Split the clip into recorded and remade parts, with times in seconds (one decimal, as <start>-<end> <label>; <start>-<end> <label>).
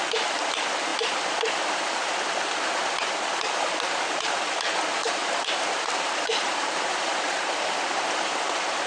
0.0-5.0 recorded; 5.0-7.8 remade; 7.8-8.9 recorded